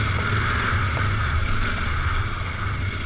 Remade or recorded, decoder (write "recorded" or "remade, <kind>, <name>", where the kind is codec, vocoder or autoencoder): recorded